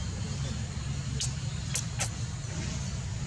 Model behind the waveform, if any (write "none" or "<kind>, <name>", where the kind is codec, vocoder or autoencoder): none